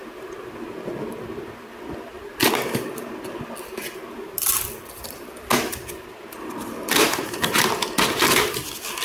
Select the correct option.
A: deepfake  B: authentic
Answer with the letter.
B